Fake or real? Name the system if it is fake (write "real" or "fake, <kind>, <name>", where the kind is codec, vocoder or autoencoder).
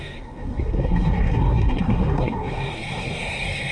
fake, codec, SNAC